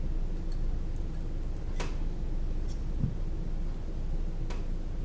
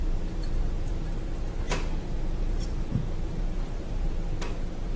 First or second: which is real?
first